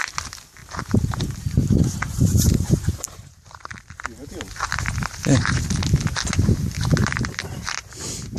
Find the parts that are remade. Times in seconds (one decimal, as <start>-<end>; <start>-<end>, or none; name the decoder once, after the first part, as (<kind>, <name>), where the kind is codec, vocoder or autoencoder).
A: 0.6-5.6 (vocoder, BigVGAN v2); 7.0-7.6

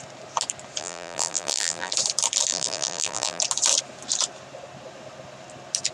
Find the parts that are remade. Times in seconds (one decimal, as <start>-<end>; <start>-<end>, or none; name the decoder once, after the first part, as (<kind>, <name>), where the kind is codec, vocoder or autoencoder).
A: 0.8-1.9 (vocoder, BigVGAN v2); 2.5-3.4

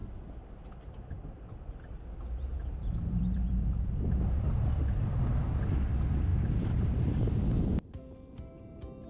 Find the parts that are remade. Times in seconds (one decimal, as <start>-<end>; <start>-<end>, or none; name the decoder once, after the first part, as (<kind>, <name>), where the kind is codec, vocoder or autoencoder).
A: 2.5-5.6 (vocoder, BigVGAN v2); 6.3-7.1

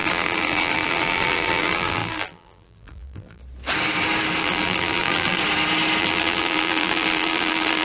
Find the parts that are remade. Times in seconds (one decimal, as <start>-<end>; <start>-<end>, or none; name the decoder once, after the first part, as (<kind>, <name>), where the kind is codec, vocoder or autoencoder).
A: 0.0-3.4 (vocoder, BigVGAN v2); 4.4-5.4; 6.0-7.8

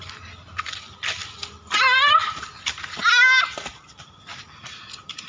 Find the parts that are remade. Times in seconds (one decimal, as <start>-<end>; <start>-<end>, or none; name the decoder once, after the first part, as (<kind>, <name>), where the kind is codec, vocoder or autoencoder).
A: 0.0-1.2 (vocoder, BigVGAN v2); 2.0-3.0; 4.6-5.3

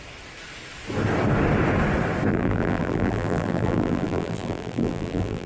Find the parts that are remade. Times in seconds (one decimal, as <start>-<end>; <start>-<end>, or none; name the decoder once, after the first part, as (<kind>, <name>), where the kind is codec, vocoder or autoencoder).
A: 2.3-5.5 (vocoder, BigVGAN v2)